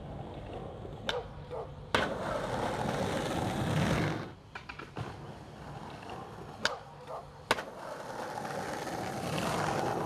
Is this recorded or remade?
recorded